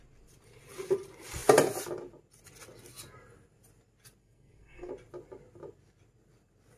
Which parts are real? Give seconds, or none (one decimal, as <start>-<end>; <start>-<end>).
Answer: 0.0-4.2; 4.9-6.8